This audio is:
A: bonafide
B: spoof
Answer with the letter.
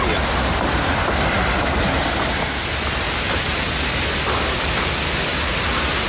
A